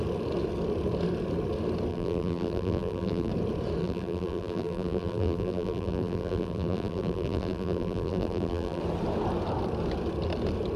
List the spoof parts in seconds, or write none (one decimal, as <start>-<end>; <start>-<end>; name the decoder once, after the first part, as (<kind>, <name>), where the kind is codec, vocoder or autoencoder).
1.9-3.3 (vocoder, BigVGAN v2); 3.8-8.8